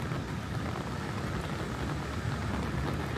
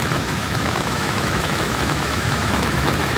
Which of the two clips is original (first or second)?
first